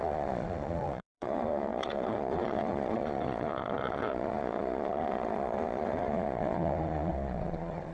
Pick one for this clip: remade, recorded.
remade